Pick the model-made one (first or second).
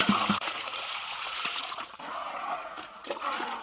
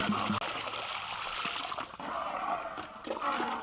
first